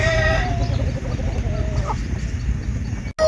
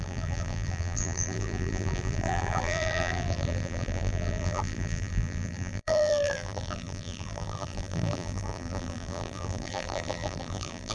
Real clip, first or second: first